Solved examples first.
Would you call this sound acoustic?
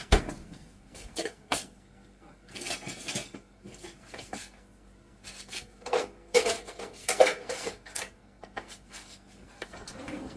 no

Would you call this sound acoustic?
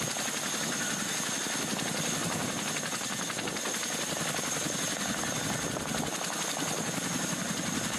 yes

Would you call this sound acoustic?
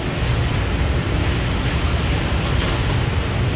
yes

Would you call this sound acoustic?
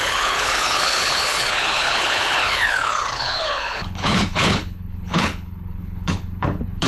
no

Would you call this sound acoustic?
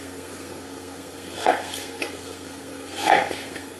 no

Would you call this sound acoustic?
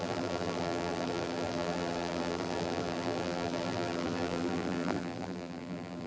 no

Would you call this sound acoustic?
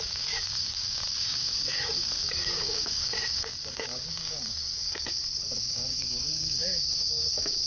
no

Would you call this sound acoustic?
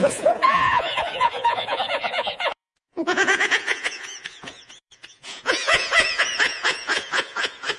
no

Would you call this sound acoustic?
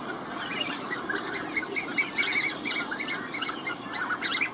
yes